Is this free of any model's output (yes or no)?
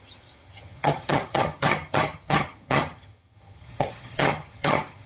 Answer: no